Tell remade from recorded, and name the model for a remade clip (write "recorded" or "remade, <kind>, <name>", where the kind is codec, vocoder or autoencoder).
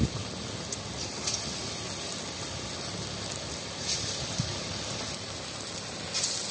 recorded